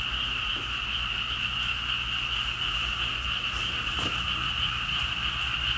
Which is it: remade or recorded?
recorded